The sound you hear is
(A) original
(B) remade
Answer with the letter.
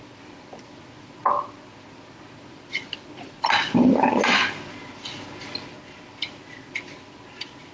A